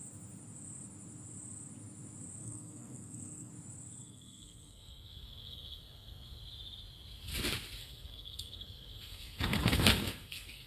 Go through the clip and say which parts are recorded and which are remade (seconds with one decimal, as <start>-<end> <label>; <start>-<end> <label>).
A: 0.0-2.4 recorded; 2.4-3.5 remade; 3.5-4.0 recorded; 4.0-6.4 remade; 6.4-7.8 recorded; 7.8-10.7 remade